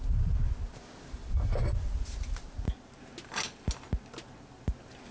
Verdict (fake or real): real